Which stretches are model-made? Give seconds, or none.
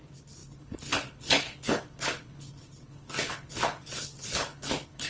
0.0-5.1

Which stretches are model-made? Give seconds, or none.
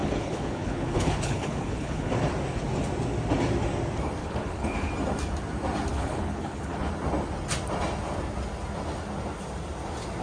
0.0-2.1; 4.2-4.9; 5.9-6.9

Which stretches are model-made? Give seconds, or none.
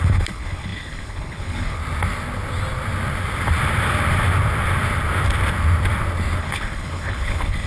0.0-1.8; 6.4-7.7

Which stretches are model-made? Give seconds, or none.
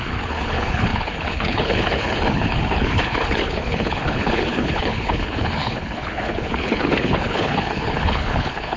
0.0-8.8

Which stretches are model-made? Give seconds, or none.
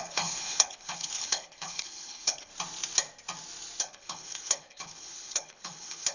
0.0-2.5; 3.8-6.1